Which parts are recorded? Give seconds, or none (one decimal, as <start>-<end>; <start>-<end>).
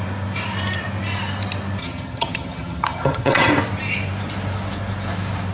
0.0-1.8; 3.5-5.5